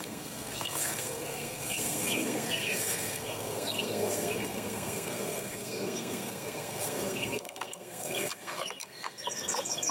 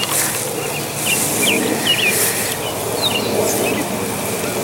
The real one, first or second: second